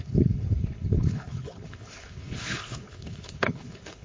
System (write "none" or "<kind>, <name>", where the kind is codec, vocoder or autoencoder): codec, HILCodec